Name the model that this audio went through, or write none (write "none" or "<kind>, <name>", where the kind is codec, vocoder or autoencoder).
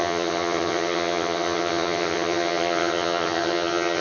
vocoder, HiFi-GAN